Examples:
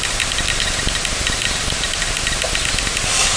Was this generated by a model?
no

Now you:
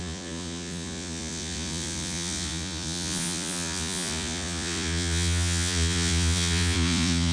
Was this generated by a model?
yes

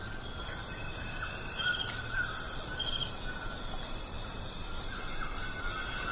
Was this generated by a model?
no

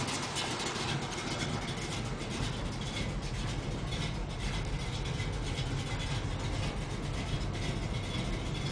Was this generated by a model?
no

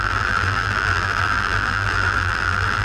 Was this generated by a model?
yes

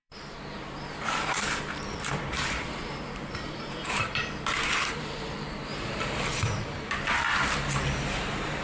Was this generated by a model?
yes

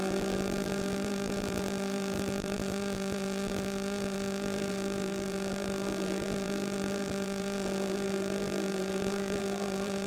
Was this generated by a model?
yes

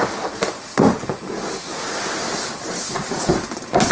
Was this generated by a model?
no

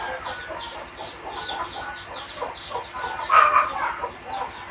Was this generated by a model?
no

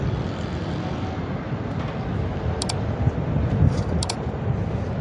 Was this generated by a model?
no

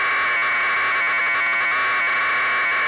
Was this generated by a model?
no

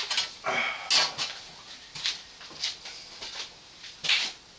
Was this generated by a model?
no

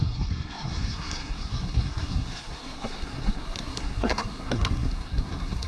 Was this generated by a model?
yes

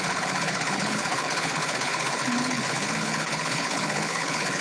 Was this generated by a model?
yes